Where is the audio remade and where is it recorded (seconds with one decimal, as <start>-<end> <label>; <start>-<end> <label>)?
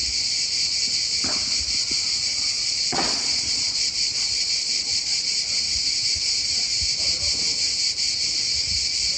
0.0-2.3 recorded; 2.3-5.3 remade; 5.3-9.2 recorded